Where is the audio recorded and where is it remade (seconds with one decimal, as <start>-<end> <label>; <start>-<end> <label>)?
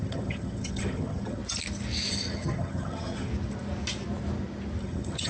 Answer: 0.0-1.4 remade; 1.4-2.1 recorded; 2.1-3.3 remade; 3.3-4.8 recorded; 4.8-5.3 remade